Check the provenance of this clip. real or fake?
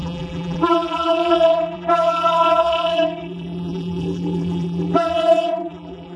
fake